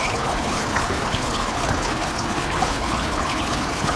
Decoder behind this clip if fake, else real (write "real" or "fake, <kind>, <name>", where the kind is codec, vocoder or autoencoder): fake, codec, HILCodec